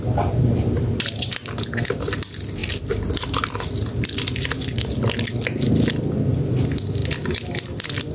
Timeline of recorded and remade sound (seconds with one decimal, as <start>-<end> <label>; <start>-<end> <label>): 0.0-8.1 recorded